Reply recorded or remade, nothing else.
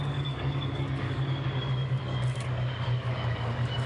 remade